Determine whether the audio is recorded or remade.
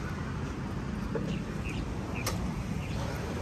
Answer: recorded